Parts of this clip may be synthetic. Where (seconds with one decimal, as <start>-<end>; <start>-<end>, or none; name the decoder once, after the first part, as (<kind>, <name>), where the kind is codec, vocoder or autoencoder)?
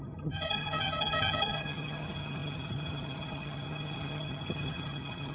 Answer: 0.0-5.3 (vocoder, HiFi-GAN)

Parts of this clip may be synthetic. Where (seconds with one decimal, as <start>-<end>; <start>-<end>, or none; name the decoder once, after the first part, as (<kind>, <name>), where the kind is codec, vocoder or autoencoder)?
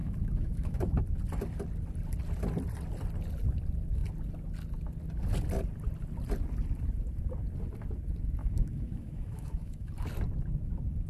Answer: 0.0-1.0 (autoencoder, DAC-VAE); 8.4-9.9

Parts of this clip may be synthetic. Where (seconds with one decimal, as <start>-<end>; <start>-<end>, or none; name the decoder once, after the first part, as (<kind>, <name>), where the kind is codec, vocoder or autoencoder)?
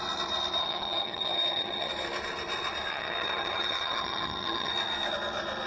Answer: 0.6-1.9 (vocoder, HiFi-GAN); 2.9-4.7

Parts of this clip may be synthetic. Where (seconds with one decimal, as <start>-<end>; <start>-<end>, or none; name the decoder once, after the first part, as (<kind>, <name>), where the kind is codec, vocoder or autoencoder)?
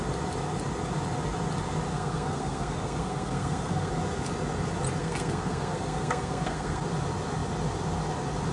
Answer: 1.9-3.9 (codec, SNAC); 5.0-6.8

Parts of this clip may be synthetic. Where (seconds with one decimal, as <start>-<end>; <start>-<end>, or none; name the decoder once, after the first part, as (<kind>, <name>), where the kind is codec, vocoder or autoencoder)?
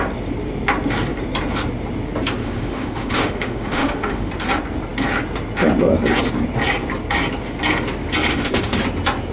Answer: 2.4-4.3 (autoencoder, DAC-VAE); 8.3-8.8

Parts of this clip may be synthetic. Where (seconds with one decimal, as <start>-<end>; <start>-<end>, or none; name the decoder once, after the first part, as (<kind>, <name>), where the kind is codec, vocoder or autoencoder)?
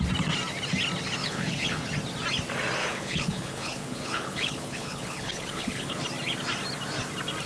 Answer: 1.2-1.9 (codec, HILCodec); 2.8-6.0